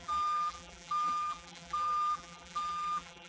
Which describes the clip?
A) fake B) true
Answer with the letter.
A